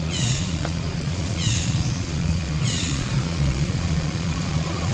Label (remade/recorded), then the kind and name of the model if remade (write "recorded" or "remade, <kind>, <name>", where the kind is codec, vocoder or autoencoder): remade, vocoder, Vocos